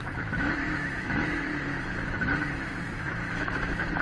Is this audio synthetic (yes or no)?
yes